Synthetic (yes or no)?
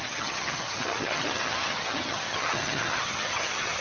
yes